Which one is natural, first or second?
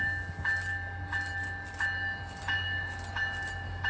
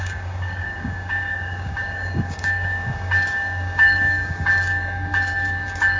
first